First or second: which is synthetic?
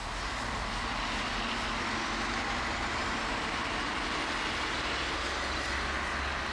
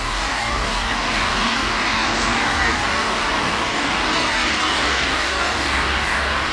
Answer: second